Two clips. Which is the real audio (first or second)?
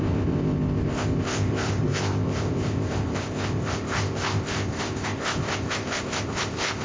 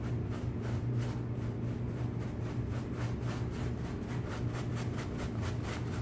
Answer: second